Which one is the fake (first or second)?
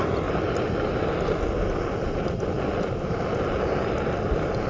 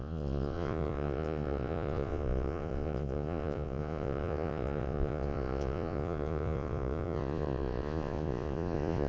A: second